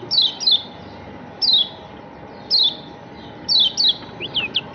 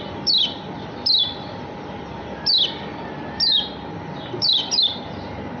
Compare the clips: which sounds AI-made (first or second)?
second